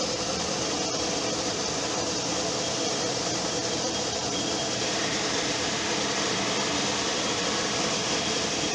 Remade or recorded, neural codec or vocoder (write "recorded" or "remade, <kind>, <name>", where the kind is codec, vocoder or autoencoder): remade, vocoder, BigVGAN v2